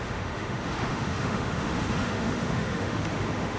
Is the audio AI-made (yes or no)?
yes